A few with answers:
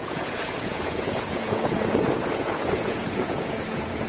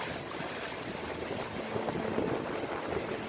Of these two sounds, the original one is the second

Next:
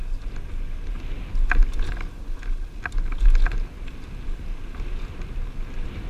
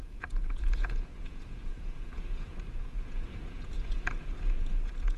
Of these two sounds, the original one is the first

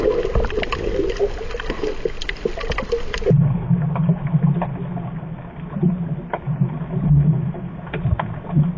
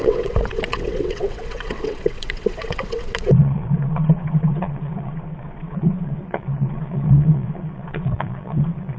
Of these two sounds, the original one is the first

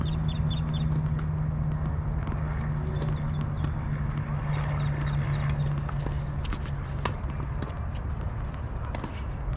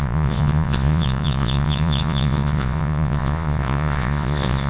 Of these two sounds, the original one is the first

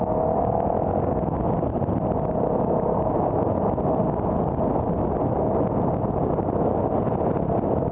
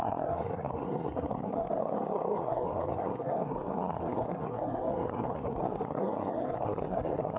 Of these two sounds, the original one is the first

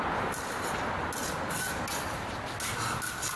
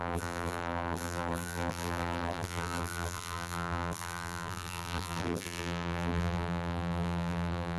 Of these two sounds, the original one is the first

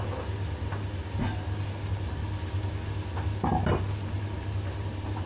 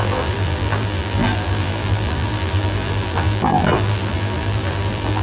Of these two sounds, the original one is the first